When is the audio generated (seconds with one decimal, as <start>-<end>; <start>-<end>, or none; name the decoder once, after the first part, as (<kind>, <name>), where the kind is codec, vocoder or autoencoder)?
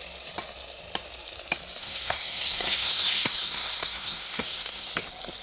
1.8-4.9 (codec, SNAC)